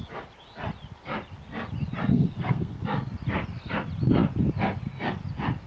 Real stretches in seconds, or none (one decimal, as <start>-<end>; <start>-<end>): 0.0-2.1; 2.8-5.7